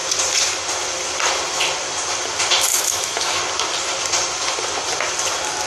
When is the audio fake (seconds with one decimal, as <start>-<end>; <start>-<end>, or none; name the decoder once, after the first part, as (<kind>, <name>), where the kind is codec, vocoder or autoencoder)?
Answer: 2.7-3.4 (autoencoder, DAC-VAE)

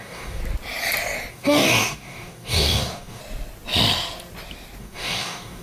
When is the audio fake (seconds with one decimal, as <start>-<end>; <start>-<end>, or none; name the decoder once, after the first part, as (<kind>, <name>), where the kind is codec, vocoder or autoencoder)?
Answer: 0.0-0.4 (codec, DAC); 1.3-3.2; 4.8-5.6

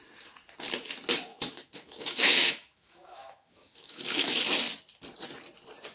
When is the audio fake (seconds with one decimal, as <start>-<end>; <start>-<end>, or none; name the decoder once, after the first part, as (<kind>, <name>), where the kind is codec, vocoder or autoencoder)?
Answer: 1.3-4.4 (autoencoder, DAC-VAE)

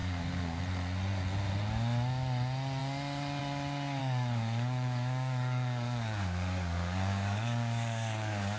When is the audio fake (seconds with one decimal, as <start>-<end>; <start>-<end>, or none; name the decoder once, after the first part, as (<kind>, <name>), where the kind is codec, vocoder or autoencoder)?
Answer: 0.0-0.6 (codec, DAC); 4.0-8.6

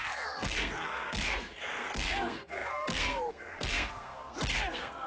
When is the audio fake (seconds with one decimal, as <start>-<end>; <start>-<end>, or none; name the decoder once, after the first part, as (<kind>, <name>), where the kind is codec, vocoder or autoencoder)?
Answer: 0.0-5.1 (codec, SNAC)

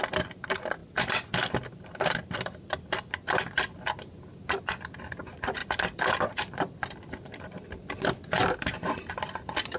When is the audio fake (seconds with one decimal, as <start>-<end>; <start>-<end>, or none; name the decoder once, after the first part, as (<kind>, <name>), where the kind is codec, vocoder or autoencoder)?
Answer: none

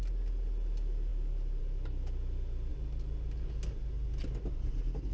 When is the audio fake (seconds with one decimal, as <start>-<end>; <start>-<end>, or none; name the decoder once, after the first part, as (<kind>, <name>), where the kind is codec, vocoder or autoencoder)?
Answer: none